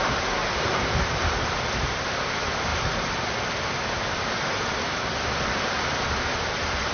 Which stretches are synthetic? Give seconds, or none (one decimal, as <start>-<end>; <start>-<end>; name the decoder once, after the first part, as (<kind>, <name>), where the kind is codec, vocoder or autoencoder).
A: 0.0-0.4 (vocoder, BigVGAN v2); 1.6-2.7; 4.8-6.9